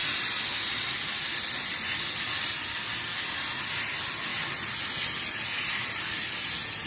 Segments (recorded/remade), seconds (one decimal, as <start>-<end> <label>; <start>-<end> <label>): 0.0-6.9 recorded